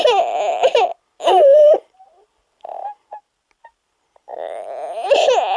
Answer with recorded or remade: remade